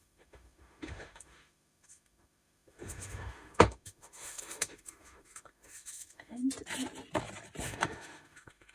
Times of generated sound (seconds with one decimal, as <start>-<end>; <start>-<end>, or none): 0.0-6.4; 7.6-8.7